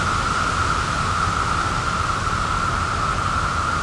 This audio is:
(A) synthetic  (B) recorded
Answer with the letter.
B